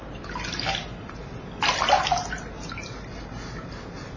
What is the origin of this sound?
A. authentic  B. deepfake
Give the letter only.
A